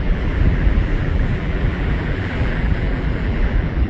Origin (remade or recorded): remade